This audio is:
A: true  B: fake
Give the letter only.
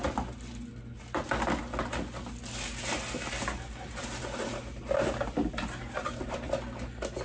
A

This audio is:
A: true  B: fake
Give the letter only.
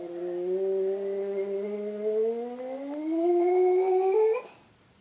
A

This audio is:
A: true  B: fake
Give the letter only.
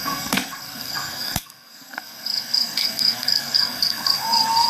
B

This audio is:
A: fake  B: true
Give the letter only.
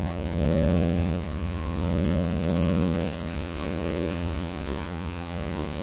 A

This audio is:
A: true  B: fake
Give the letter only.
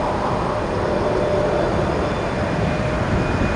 A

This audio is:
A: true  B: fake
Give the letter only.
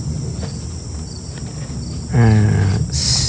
A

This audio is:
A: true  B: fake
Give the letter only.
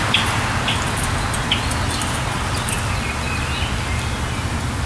A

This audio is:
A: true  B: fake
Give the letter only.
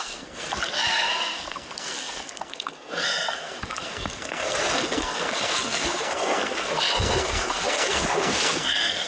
B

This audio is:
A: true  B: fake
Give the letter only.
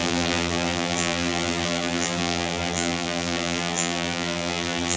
B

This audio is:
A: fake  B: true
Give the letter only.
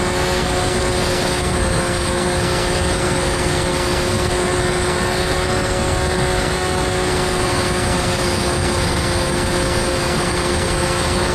A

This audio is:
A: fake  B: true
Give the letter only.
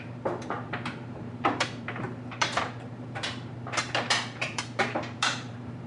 A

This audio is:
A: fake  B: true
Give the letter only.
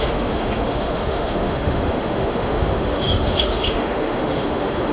A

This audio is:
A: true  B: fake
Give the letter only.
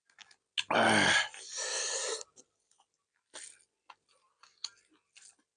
A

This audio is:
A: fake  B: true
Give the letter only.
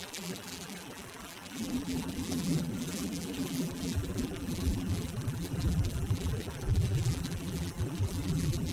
A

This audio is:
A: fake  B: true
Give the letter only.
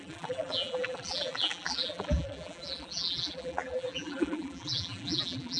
A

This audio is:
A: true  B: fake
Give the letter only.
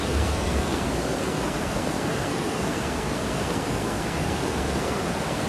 B